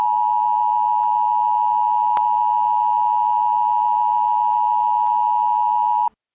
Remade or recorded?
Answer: recorded